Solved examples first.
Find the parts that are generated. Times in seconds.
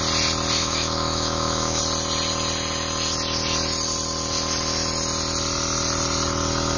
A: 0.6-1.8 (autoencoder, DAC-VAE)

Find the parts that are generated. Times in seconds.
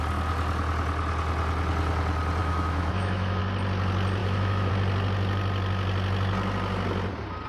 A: 2.4-3.4 (autoencoder, DAC-VAE); 4.2-4.7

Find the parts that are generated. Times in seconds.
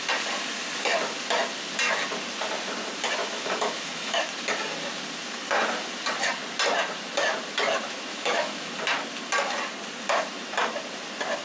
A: 3.2-4.3 (autoencoder, DAC-VAE); 8.1-8.7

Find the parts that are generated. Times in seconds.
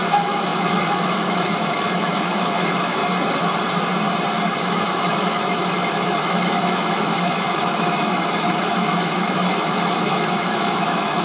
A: 0.0-3.0 (autoencoder, DAC-VAE); 4.6-11.2